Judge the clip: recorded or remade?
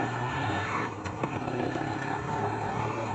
remade